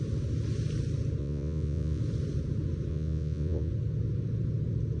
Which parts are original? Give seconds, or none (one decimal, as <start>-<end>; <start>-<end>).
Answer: 0.0-1.2; 2.0-2.9; 3.7-5.0